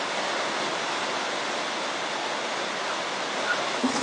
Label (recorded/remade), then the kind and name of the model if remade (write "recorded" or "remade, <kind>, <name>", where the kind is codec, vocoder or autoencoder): recorded